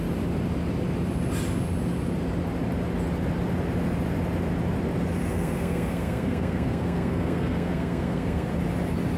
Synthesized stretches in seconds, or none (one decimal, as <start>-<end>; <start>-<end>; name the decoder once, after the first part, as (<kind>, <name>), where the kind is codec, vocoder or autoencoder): 5.3-8.5 (codec, SNAC)